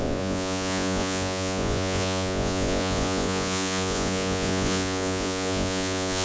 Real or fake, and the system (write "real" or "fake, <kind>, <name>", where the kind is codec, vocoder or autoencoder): fake, vocoder, Vocos